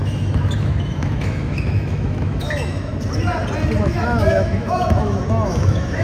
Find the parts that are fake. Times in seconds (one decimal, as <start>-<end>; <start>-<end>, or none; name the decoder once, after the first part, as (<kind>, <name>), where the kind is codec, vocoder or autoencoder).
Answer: 0.0-2.9 (autoencoder, DAC-VAE); 3.8-6.0